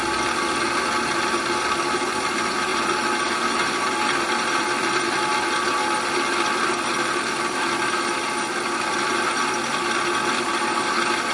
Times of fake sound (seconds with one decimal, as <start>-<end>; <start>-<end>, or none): none